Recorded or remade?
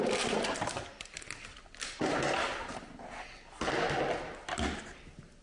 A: recorded